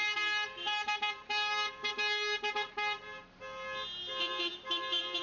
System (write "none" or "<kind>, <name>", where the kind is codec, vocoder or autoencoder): none